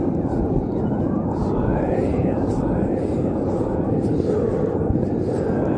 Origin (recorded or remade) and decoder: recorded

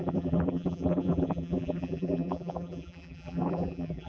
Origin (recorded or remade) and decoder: remade, vocoder, BigVGAN v2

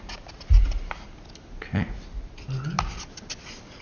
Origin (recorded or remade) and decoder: recorded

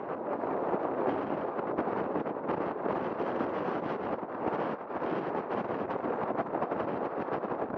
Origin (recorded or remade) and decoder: recorded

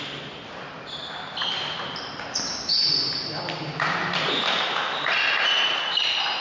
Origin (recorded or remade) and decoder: recorded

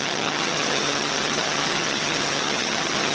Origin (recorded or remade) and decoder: remade, vocoder, HiFi-GAN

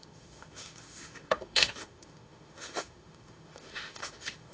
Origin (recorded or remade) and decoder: remade, autoencoder, DAC-VAE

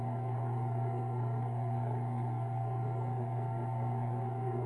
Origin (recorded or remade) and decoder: remade, codec, SNAC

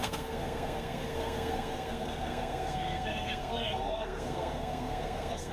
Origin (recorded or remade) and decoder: remade, codec, SNAC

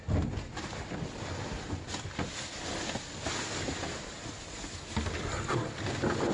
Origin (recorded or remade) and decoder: recorded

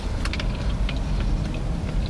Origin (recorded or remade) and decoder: recorded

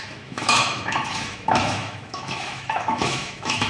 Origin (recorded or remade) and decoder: remade, autoencoder, DAC-VAE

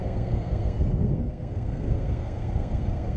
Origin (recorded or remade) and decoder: remade, codec, SNAC